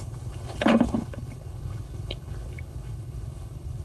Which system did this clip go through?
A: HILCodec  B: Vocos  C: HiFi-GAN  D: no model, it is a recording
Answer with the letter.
A